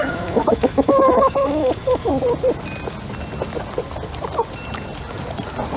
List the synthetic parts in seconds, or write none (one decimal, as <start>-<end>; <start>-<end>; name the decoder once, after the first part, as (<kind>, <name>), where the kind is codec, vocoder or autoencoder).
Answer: 0.0-2.1 (autoencoder, DAC-VAE)